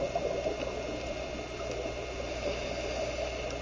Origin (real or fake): real